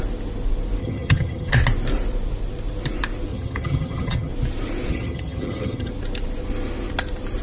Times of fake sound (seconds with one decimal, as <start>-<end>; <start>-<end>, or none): 0.8-1.5; 3.3-4.3; 4.9-5.9